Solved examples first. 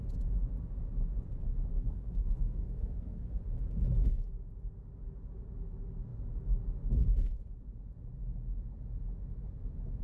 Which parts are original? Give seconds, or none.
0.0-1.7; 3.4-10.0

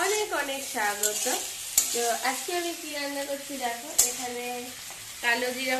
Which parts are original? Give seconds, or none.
0.0-5.8

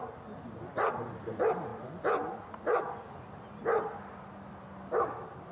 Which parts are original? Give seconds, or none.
0.0-5.5